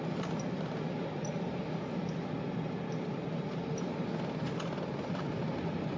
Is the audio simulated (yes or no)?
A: no